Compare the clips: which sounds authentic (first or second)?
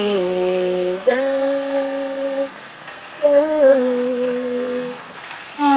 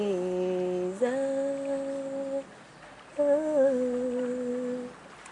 second